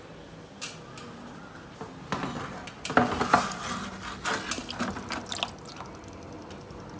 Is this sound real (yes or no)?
yes